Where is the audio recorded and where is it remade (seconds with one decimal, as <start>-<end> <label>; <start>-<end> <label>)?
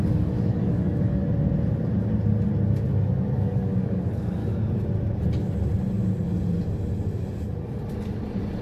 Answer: 0.0-1.2 remade; 1.2-3.3 recorded; 3.3-4.4 remade; 4.4-8.6 recorded